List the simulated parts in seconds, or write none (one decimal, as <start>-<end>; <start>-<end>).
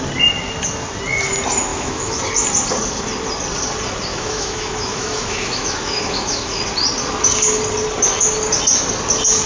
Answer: 1.7-2.2; 4.1-6.6